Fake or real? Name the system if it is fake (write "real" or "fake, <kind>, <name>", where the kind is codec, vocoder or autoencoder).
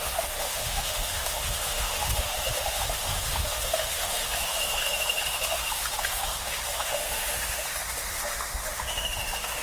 fake, autoencoder, DAC-VAE